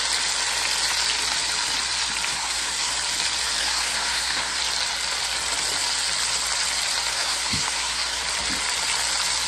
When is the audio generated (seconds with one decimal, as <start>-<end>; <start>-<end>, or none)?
2.3-2.9; 3.6-4.6; 7.1-8.2